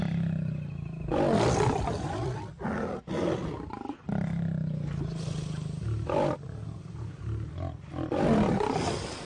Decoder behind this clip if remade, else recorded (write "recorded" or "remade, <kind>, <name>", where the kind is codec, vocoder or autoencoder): recorded